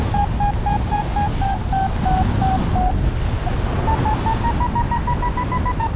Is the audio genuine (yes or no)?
yes